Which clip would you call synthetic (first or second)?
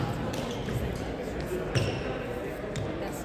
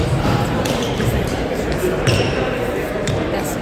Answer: second